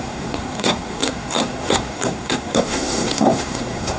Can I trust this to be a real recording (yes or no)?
no